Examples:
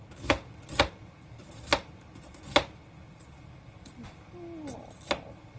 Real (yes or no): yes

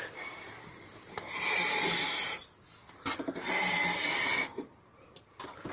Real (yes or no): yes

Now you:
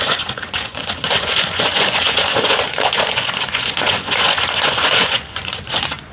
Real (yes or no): no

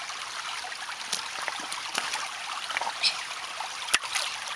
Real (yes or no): yes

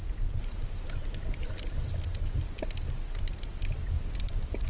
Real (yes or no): yes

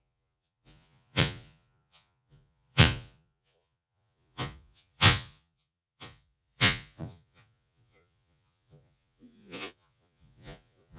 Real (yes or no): no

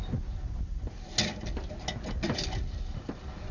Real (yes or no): yes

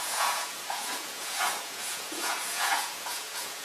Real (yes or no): no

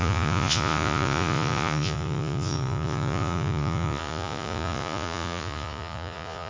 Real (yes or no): no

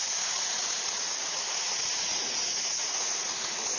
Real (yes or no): no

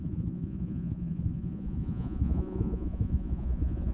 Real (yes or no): no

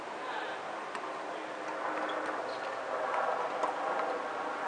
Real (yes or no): yes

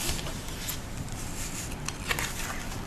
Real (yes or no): yes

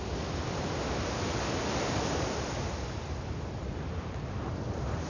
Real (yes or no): yes